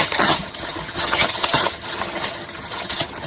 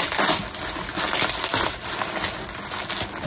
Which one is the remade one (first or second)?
first